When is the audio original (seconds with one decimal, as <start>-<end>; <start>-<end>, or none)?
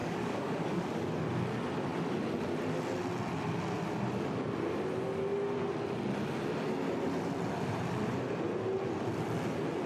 1.1-9.9